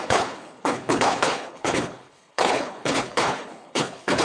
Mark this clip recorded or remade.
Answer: remade